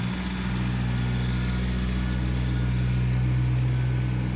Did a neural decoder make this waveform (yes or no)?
no